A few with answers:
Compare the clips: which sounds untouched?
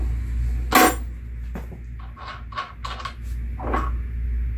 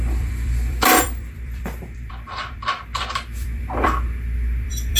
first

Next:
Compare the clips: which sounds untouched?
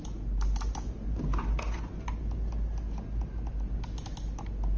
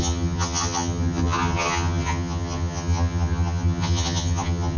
first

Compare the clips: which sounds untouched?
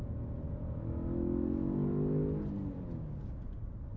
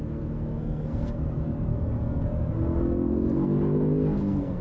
first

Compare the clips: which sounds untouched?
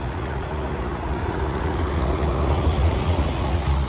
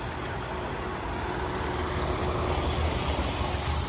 second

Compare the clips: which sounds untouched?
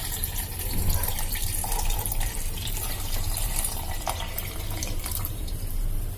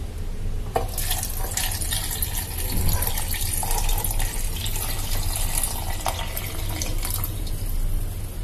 second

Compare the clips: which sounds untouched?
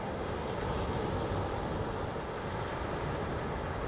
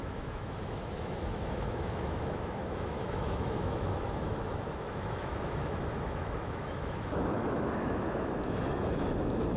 first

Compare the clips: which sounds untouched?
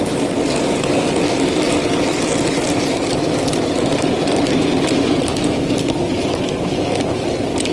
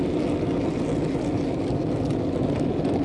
second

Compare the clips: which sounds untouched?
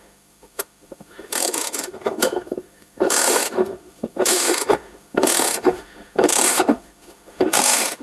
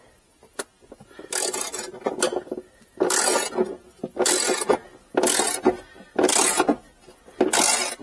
second